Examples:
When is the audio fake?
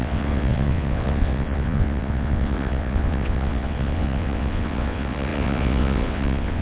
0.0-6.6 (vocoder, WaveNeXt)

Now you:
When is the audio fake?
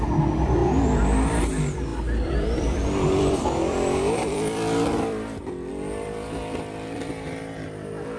1.9-5.7 (vocoder, BigVGAN v2)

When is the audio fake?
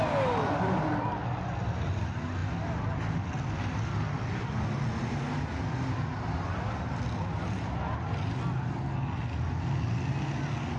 none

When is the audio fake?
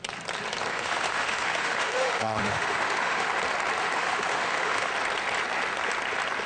0.7-3.3 (autoencoder, DAC-VAE); 3.8-4.9